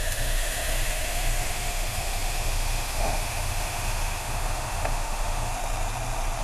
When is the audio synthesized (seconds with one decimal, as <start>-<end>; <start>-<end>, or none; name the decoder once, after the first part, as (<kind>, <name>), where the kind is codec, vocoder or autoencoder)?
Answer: 0.0-5.5 (autoencoder, DAC-VAE)